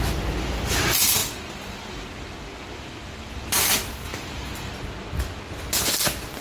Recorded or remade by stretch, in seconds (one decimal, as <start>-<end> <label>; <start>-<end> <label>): 0.0-6.4 recorded

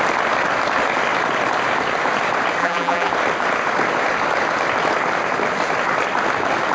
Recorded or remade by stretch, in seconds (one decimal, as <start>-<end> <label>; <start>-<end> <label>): 0.0-2.6 recorded; 2.6-3.1 remade; 3.1-6.7 recorded

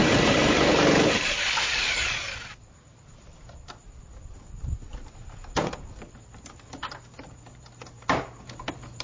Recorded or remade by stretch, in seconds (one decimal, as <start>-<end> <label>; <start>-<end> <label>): 0.0-9.0 remade

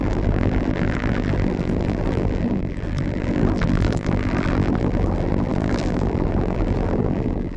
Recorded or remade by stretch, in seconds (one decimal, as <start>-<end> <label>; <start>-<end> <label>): 0.0-7.6 remade